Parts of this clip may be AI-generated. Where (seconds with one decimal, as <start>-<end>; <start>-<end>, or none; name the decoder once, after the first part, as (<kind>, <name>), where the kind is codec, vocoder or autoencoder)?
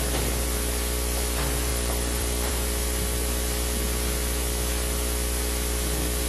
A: 1.7-2.5 (vocoder, BigVGAN v2)